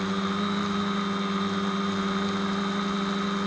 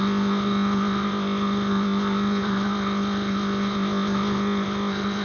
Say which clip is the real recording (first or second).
first